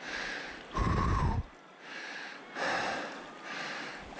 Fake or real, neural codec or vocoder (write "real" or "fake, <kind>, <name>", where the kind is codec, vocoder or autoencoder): real